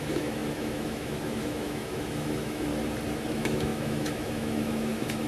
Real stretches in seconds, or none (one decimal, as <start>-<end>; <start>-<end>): 2.7-3.3